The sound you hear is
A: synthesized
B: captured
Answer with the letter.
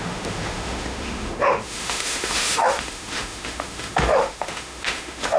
A